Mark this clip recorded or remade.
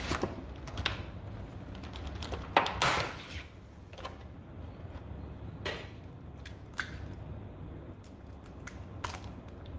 recorded